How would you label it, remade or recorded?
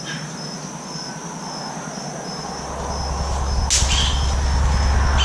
recorded